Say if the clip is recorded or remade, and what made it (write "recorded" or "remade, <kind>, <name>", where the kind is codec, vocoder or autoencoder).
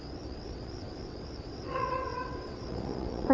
remade, vocoder, WaveNeXt